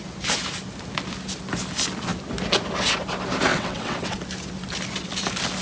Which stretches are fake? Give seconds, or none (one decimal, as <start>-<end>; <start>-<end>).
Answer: 3.5-4.2